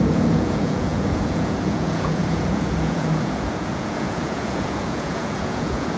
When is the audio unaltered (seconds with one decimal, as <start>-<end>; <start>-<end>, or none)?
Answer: none